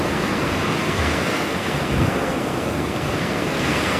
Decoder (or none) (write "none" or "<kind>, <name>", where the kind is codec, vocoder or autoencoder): codec, SNAC